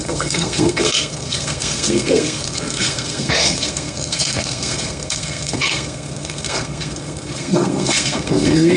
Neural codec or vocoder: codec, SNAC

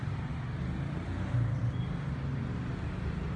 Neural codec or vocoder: none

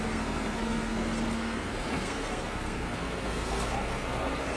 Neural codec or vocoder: codec, SNAC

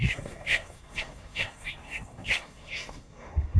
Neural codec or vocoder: codec, SNAC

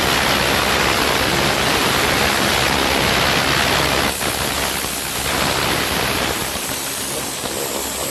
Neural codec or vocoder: none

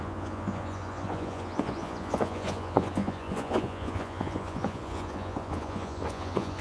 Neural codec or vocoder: vocoder, Vocos